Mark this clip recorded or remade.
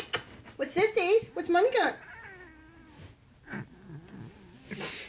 recorded